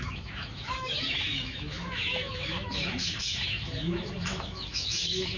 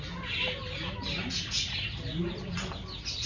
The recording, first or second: second